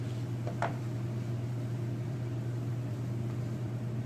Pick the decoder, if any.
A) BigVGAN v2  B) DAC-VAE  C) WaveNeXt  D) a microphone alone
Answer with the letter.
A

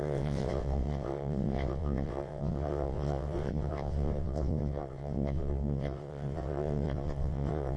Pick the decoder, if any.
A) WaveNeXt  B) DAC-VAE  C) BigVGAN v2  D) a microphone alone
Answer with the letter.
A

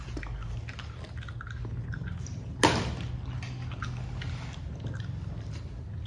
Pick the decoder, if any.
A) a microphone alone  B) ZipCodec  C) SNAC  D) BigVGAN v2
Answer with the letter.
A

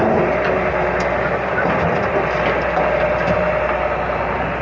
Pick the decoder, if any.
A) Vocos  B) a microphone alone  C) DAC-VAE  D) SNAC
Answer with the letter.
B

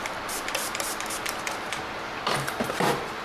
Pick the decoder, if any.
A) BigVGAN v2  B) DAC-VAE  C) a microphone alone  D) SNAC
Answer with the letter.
C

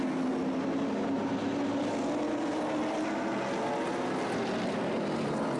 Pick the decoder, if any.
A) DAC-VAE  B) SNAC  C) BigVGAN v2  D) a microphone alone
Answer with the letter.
D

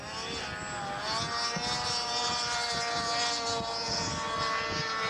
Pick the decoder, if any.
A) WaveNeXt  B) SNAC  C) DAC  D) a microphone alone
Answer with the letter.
D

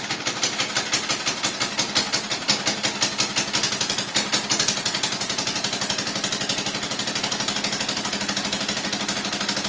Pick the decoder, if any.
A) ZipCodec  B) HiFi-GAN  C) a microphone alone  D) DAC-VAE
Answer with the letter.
C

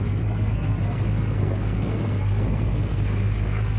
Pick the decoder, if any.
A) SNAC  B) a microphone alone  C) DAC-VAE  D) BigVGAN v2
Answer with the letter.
A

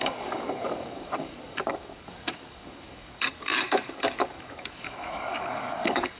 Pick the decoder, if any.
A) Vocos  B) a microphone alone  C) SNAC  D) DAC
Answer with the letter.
D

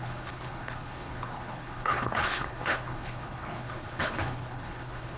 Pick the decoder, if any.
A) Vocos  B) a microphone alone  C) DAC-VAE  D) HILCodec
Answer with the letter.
D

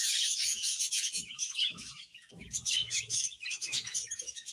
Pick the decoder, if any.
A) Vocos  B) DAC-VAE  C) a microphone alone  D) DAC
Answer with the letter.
B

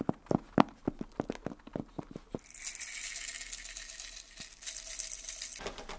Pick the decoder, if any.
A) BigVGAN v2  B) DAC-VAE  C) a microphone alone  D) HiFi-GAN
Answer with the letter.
C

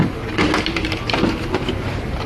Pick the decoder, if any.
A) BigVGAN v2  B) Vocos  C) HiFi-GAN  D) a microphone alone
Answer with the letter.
D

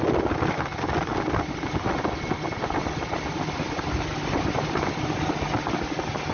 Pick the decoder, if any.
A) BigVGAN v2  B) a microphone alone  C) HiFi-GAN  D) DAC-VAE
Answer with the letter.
B